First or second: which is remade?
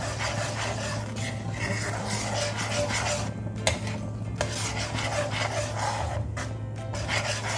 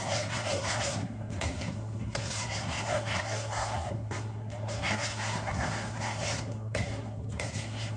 second